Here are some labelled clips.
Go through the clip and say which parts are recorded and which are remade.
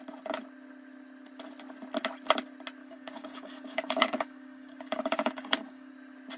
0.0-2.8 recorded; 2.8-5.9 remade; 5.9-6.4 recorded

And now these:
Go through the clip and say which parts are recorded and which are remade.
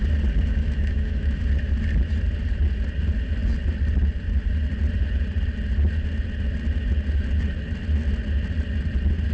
0.0-0.5 recorded; 0.5-1.4 remade; 1.4-9.3 recorded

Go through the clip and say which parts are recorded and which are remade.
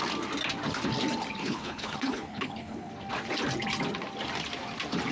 0.0-1.4 recorded; 1.4-2.9 remade; 2.9-5.1 recorded